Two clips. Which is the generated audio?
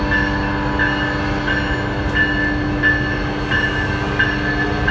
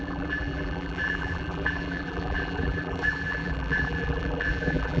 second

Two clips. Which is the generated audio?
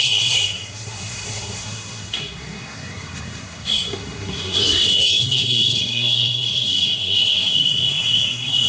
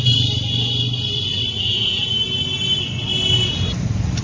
first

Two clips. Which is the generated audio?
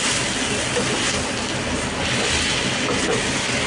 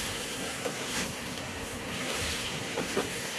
second